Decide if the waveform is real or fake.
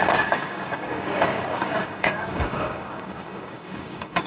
fake